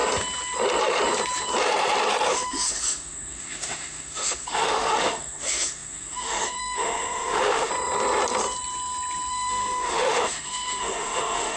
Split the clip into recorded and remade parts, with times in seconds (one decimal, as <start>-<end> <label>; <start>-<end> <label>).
0.0-2.3 recorded; 2.3-7.7 remade; 7.7-9.3 recorded; 9.3-11.6 remade